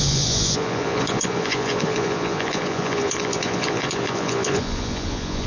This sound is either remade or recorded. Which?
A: remade